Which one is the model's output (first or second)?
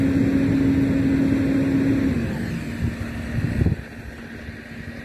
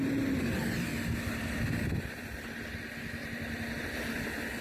second